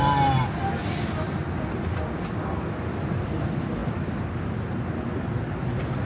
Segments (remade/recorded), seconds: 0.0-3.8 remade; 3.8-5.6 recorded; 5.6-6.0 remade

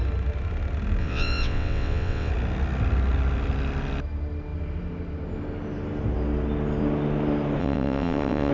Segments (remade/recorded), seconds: 0.0-1.0 recorded; 1.0-2.3 remade; 2.3-7.6 recorded; 7.6-8.5 remade

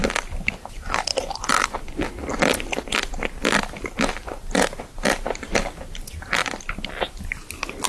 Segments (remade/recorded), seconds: 0.0-1.1 recorded; 1.1-4.8 remade; 4.8-6.4 recorded; 6.4-7.1 remade; 7.1-7.9 recorded

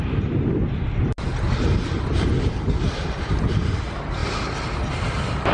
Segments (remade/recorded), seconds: 0.0-5.5 recorded

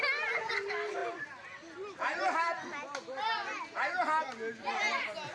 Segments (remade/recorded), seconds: 0.0-5.3 recorded